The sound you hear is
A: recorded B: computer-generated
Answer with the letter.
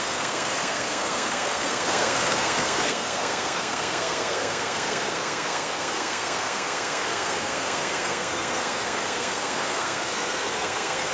B